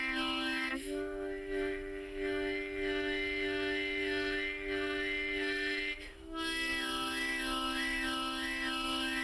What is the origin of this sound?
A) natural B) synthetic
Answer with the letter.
B